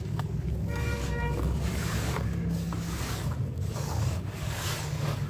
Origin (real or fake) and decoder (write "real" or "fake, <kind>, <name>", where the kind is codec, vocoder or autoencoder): fake, codec, DAC